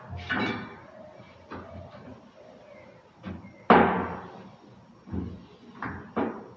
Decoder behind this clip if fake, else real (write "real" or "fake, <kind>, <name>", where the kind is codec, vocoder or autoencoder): real